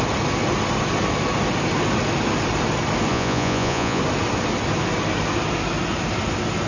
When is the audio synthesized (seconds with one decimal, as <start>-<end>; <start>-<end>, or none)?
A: 3.1-4.0